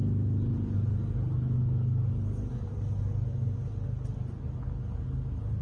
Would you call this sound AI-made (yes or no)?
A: no